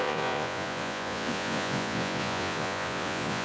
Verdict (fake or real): fake